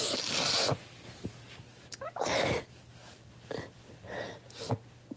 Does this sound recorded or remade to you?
recorded